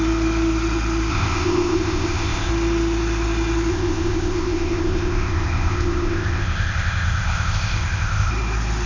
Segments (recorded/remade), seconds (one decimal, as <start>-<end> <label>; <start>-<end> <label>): 0.0-1.1 recorded; 1.1-2.5 remade; 2.5-3.7 recorded; 3.7-8.3 remade; 8.3-8.9 recorded